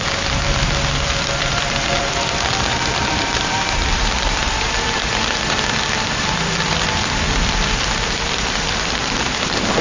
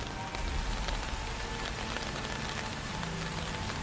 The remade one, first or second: first